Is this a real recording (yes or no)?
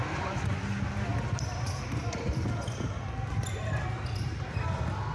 yes